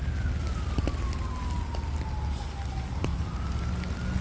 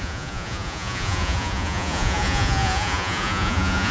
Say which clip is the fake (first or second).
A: second